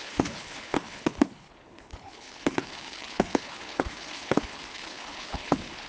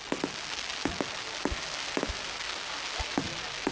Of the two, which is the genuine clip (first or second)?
second